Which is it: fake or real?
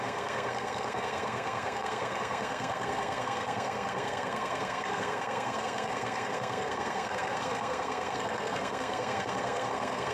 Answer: fake